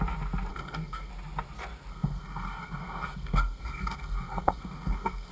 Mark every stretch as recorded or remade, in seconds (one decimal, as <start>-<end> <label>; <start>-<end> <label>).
0.0-0.5 recorded; 0.5-1.1 remade; 1.1-1.9 recorded; 1.9-5.3 remade